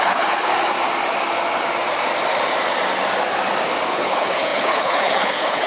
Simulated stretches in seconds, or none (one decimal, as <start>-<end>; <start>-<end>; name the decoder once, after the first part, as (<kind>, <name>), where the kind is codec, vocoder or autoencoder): 0.0-0.5 (codec, HILCodec); 3.9-5.7